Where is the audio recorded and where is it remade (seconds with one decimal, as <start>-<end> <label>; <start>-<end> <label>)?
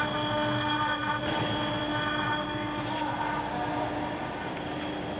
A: 0.0-5.2 recorded